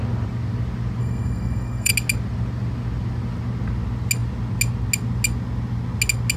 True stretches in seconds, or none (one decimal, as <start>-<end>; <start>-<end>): 0.0-1.0; 1.9-6.4